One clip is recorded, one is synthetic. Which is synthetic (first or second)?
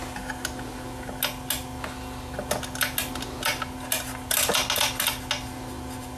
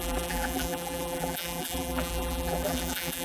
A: second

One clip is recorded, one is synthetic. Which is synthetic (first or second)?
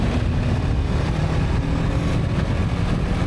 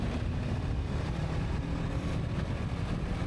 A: second